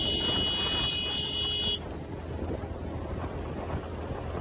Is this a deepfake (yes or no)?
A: no